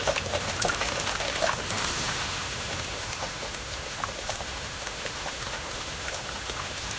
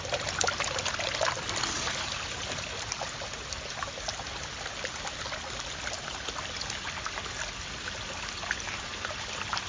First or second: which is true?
second